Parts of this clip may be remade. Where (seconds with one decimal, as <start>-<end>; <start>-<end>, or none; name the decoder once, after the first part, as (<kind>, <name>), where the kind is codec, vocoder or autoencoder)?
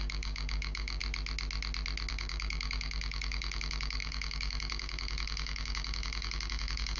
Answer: 0.0-1.0 (codec, DAC); 2.1-7.0